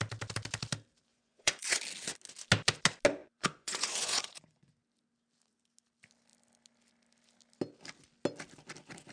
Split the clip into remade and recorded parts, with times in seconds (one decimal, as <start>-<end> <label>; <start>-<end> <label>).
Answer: 0.0-1.1 recorded; 1.1-1.8 remade; 1.8-3.2 recorded; 3.2-4.7 remade; 4.7-9.1 recorded